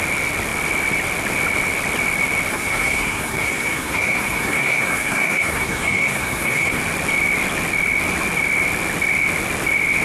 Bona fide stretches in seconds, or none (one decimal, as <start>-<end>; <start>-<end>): 0.0-2.5; 6.8-10.0